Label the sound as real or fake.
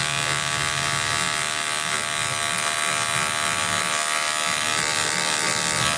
real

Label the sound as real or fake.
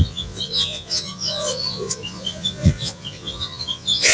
fake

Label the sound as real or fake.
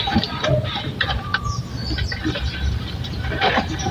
real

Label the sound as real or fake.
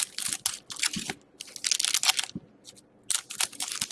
real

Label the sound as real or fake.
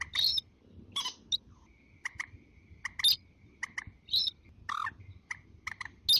real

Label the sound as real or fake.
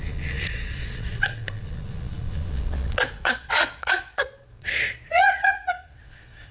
fake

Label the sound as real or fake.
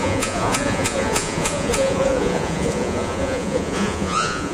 fake